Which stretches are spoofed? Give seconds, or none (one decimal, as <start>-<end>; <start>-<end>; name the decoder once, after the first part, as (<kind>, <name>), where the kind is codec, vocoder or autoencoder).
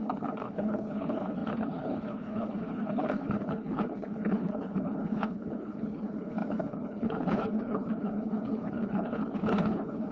0.0-10.1 (codec, HILCodec)